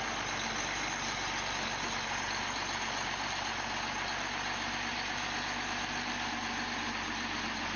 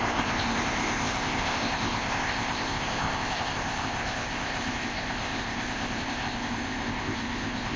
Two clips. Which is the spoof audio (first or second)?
second